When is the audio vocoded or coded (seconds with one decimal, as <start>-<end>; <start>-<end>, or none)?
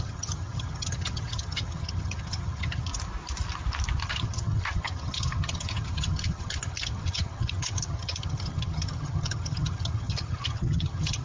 0.0-2.9; 4.0-11.2